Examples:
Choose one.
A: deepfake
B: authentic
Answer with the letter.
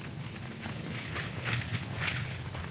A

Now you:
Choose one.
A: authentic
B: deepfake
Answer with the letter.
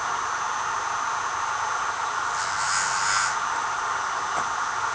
A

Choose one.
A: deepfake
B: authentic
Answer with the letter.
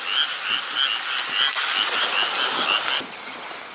B